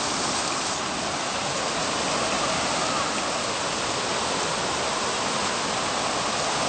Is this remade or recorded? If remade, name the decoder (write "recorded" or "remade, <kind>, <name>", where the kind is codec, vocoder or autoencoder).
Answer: recorded